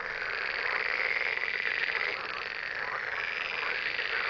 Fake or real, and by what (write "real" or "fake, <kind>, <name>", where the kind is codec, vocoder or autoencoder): real